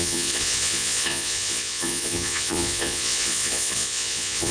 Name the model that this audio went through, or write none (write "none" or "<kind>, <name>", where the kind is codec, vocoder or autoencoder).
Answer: vocoder, Vocos